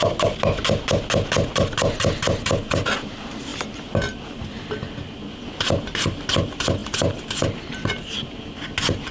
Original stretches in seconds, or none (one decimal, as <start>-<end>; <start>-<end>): 0.0-9.1